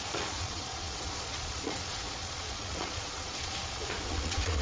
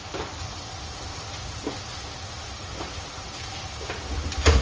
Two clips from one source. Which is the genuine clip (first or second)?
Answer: second